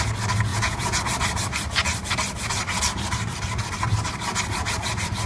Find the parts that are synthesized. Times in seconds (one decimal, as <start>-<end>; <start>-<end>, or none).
0.5-1.0